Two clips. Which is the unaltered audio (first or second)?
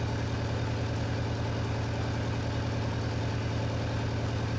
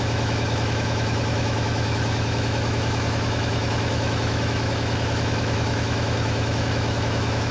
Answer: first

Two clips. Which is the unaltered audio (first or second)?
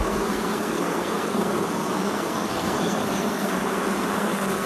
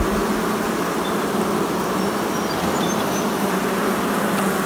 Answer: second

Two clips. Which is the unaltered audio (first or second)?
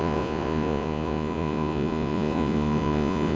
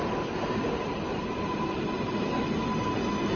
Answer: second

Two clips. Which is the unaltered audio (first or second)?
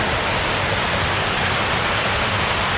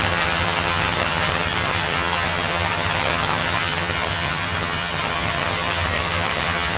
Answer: first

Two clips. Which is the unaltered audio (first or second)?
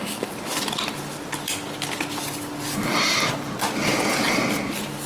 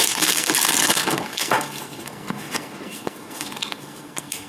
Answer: first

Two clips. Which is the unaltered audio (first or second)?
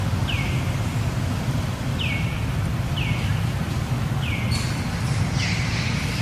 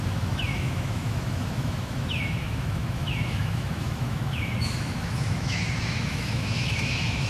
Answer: first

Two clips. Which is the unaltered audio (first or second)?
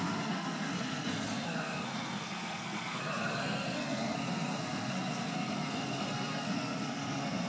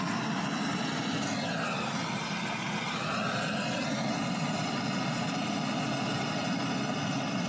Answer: second